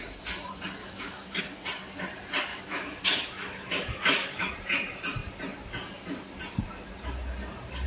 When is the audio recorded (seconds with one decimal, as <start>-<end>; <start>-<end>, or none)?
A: 0.0-0.8; 1.4-2.5; 4.5-7.9